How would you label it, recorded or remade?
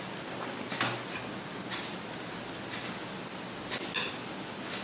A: recorded